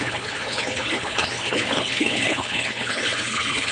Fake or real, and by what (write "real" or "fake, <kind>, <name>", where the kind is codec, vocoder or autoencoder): fake, codec, HILCodec